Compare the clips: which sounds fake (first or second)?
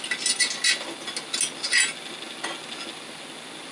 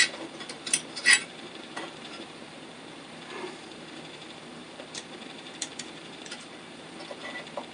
second